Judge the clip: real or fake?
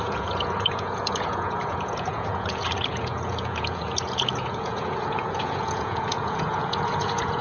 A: fake